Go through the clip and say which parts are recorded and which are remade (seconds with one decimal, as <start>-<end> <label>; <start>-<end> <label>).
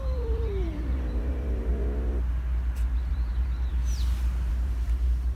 0.0-1.7 remade; 1.7-3.1 recorded; 3.1-3.8 remade; 3.8-4.5 recorded; 4.5-5.4 remade